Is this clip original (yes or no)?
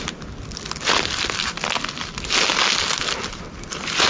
yes